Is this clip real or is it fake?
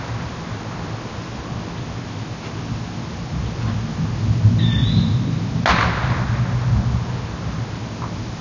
real